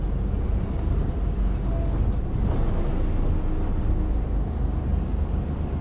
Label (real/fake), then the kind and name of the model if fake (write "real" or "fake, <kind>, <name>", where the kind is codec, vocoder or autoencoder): real